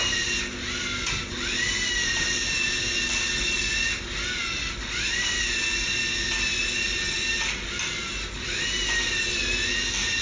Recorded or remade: recorded